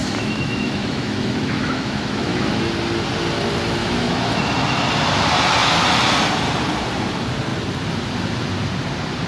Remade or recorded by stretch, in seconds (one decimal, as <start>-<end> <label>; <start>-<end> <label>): 0.0-2.5 remade; 2.5-3.8 recorded; 3.8-4.4 remade; 4.4-9.3 recorded